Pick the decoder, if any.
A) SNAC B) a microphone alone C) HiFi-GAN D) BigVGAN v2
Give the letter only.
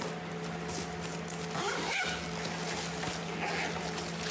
B